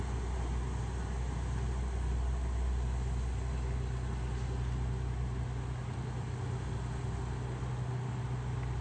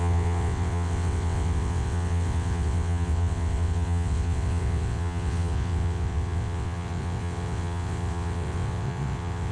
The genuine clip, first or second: first